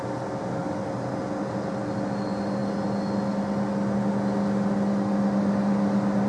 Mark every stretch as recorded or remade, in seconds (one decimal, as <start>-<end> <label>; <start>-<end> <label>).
0.0-6.3 recorded